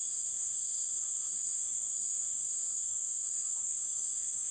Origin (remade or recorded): remade